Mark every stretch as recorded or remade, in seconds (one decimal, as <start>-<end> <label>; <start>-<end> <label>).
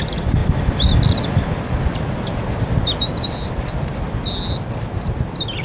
0.0-5.6 recorded